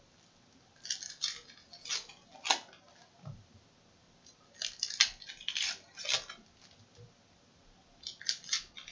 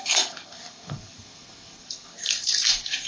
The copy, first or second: second